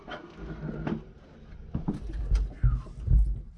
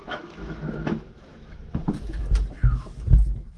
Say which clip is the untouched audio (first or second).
first